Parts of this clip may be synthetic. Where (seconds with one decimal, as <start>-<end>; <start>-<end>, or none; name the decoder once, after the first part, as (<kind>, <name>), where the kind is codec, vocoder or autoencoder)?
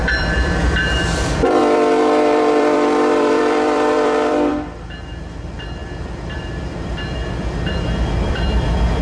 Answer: 0.0-5.8 (vocoder, BigVGAN v2); 6.4-9.0